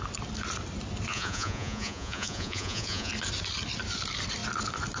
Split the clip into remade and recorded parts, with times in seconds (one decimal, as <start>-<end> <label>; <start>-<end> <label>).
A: 0.0-1.1 recorded; 1.1-3.1 remade; 3.1-5.0 recorded